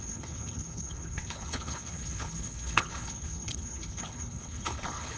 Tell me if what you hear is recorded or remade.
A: remade